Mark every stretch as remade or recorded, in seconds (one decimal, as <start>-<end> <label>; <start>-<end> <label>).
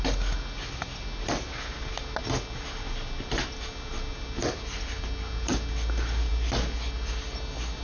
0.0-7.8 recorded